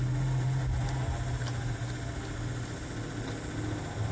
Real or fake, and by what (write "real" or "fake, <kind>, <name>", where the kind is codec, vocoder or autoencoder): real